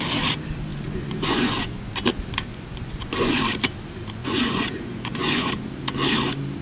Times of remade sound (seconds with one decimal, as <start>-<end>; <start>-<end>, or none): 0.7-1.9; 2.5-3.4; 4.2-5.5